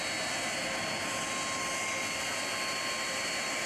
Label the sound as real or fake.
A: real